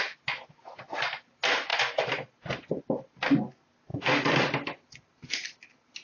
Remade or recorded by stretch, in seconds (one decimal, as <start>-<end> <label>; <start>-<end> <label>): 0.0-1.7 recorded; 1.7-2.8 remade; 2.8-3.9 recorded; 3.9-4.9 remade; 4.9-6.0 recorded